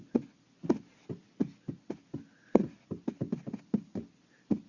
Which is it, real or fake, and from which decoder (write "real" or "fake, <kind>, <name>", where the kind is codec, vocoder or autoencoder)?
real